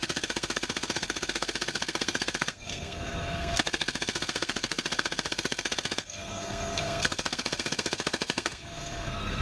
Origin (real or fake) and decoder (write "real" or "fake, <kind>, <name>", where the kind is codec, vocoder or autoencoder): fake, codec, SNAC